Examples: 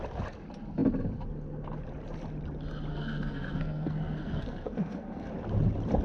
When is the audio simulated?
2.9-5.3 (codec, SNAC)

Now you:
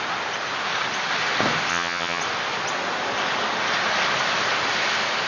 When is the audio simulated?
1.7-2.2 (vocoder, HiFi-GAN)

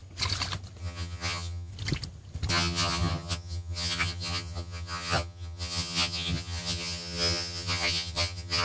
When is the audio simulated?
0.8-1.7 (vocoder, HiFi-GAN); 2.5-8.6

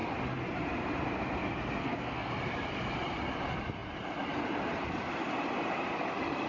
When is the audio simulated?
1.8-2.3 (codec, SNAC)

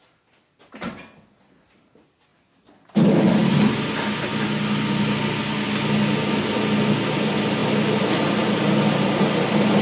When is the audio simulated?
none

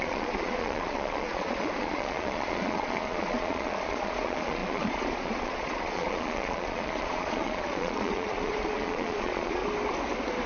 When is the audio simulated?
0.0-9.6 (vocoder, Vocos)